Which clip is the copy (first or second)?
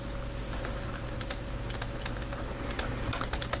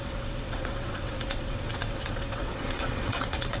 second